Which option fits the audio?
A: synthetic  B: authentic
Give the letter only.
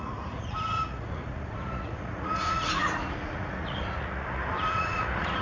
A